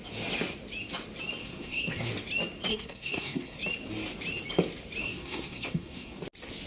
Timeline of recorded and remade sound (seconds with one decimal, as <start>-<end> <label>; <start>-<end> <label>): 0.0-1.4 recorded; 1.4-2.1 remade; 2.1-2.7 recorded; 2.7-3.6 remade; 3.6-5.0 recorded; 5.0-6.2 remade; 6.2-6.7 recorded